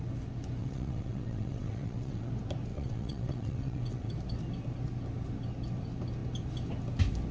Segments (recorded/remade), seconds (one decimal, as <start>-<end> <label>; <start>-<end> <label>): 0.0-0.6 recorded; 0.6-2.3 remade; 2.3-2.7 recorded; 2.7-4.1 remade; 4.1-7.3 recorded